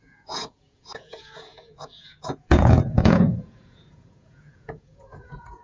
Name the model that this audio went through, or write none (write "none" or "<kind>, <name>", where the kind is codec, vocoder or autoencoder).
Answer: vocoder, Vocos